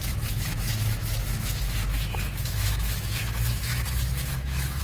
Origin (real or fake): fake